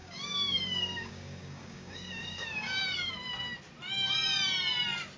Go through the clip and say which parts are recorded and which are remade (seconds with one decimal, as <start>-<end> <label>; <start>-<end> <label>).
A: 0.0-3.1 remade; 3.1-5.2 recorded

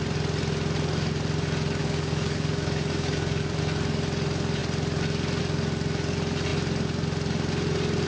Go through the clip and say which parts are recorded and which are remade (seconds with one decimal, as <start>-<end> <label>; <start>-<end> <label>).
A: 0.0-1.8 recorded; 1.8-3.6 remade; 3.6-8.1 recorded

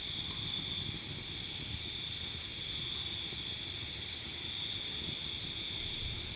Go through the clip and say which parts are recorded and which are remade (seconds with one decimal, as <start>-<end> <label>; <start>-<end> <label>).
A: 0.0-6.4 recorded

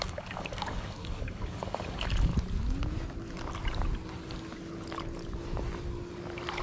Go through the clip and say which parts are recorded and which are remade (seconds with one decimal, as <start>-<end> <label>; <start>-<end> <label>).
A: 0.0-2.3 remade; 2.3-6.6 recorded